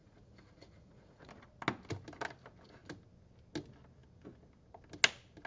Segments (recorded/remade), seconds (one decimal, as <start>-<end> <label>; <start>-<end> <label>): 0.0-1.3 remade; 1.3-5.5 recorded